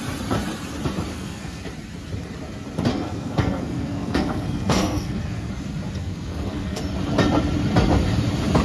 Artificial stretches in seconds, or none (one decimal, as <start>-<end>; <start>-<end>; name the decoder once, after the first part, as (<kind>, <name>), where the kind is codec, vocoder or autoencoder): 1.1-1.6 (codec, SNAC); 2.9-5.5; 6.0-6.8

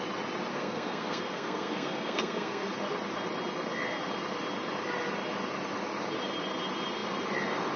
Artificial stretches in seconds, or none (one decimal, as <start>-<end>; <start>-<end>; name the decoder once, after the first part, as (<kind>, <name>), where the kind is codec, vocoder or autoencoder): 0.5-2.7 (codec, SNAC)

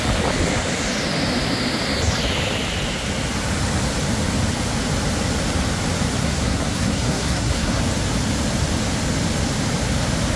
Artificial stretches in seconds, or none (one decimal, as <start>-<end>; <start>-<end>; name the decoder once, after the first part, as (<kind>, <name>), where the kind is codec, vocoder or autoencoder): 6.2-7.8 (codec, SNAC)

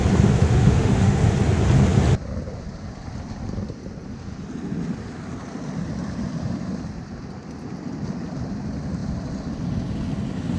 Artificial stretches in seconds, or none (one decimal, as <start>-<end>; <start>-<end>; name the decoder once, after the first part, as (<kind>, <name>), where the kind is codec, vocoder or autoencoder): 0.4-1.3 (autoencoder, DAC-VAE)

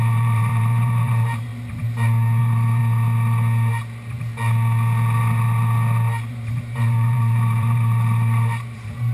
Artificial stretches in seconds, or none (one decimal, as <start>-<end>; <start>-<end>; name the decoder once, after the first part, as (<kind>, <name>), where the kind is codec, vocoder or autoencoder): 0.0-1.5 (vocoder, BigVGAN v2); 2.4-2.8; 6.3-9.1

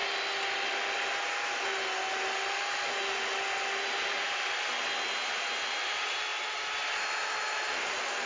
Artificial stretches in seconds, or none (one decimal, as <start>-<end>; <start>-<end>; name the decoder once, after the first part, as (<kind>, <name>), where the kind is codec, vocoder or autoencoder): none

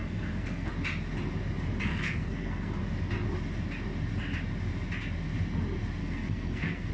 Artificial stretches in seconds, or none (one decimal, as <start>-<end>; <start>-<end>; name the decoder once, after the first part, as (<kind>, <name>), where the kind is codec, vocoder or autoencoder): 0.0-0.7 (codec, SNAC); 1.9-2.7; 6.0-6.9

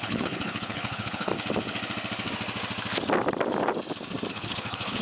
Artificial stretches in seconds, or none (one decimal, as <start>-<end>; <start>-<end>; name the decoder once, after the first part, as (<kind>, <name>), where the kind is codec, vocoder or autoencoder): 0.0-1.3 (codec, HILCodec); 4.3-5.0